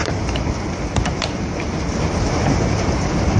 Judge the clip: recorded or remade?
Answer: recorded